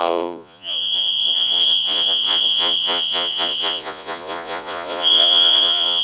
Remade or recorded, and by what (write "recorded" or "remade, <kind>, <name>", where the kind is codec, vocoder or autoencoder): remade, vocoder, Vocos